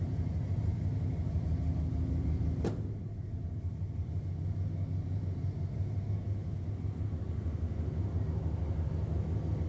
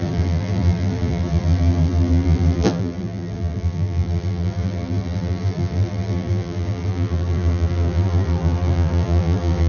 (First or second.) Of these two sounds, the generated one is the second